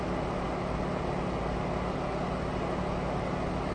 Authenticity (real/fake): real